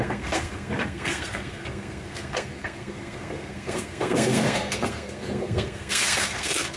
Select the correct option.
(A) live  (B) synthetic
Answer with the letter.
B